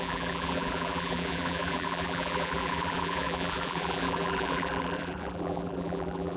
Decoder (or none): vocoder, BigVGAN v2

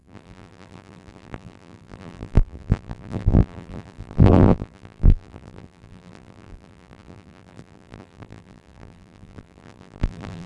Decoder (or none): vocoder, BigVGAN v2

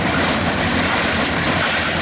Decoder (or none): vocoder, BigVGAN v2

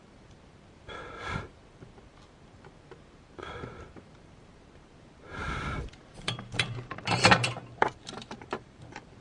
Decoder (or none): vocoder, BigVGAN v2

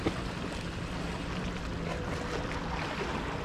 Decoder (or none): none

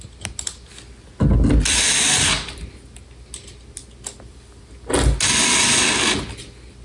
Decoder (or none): none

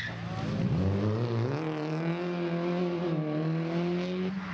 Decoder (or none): none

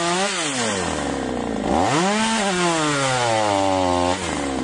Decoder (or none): none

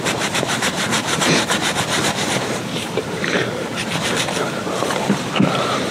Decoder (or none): vocoder, BigVGAN v2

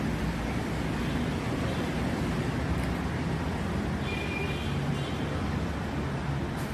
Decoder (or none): none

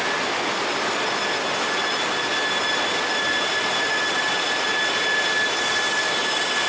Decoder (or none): none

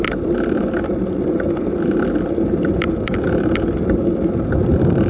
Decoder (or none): vocoder, BigVGAN v2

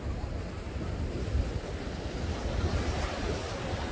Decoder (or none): none